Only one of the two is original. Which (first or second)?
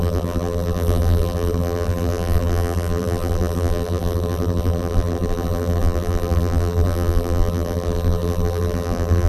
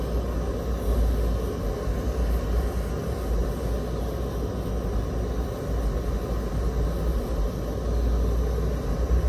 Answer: second